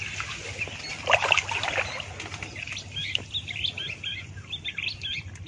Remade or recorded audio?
recorded